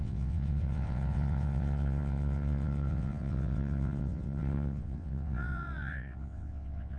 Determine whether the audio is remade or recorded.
remade